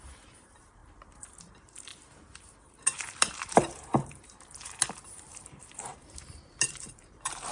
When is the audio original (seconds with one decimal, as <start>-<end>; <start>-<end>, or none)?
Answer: 1.9-2.4